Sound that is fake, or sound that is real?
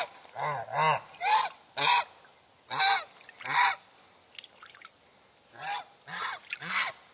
real